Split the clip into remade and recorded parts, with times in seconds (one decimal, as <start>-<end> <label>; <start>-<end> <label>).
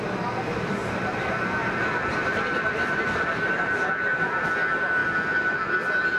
0.0-0.8 recorded; 0.8-4.5 remade; 4.5-6.2 recorded